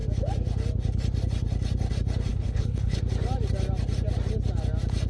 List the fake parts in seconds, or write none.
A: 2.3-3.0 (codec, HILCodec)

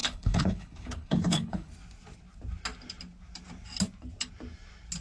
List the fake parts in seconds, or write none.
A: 0.0-1.7 (codec, HILCodec)

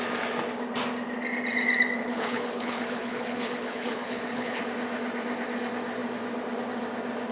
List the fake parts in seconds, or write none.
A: 2.0-4.6 (codec, HILCodec)

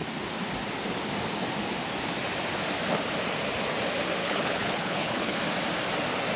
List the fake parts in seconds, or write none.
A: 4.2-5.4 (codec, HILCodec)

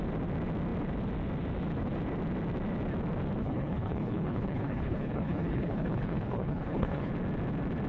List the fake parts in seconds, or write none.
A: 3.4-7.1 (codec, HILCodec)